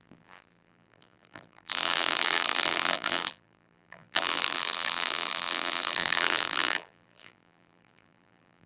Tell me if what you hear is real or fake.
fake